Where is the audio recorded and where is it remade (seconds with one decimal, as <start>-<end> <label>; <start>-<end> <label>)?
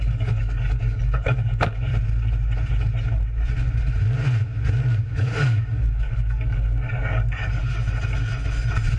0.0-1.9 remade; 1.9-5.1 recorded; 5.1-7.6 remade; 7.6-9.0 recorded